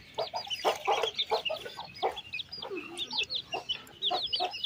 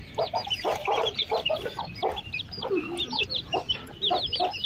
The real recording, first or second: first